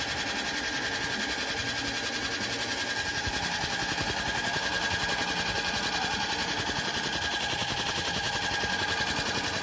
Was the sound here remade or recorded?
recorded